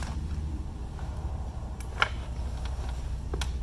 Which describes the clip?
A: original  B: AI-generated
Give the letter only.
A